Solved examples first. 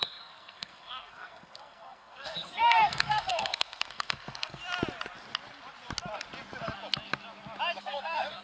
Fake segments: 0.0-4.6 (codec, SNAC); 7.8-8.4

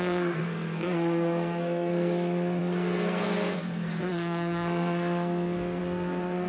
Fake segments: 0.0-6.5 (codec, SNAC)

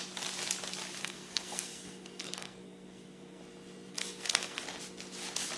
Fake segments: 1.0-3.4 (codec, SNAC); 3.9-4.6

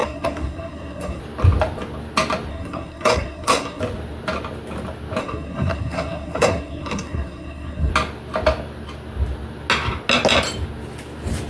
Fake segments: 0.0-1.2 (codec, SNAC); 2.5-3.8; 5.2-7.9

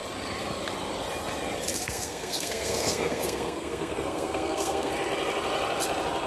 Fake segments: 1.7-4.9 (codec, SNAC)